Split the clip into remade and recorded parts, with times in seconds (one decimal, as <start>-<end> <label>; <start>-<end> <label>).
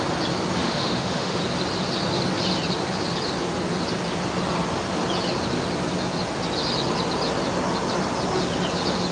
0.0-0.6 recorded; 0.6-1.4 remade; 1.4-9.1 recorded